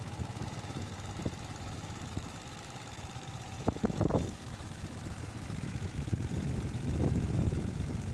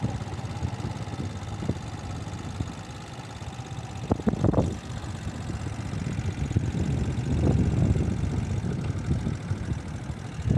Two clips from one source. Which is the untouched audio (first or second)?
second